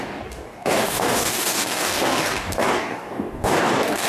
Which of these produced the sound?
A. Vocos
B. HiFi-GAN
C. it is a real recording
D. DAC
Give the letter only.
D